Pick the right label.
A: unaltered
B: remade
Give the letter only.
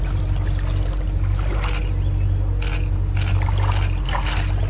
A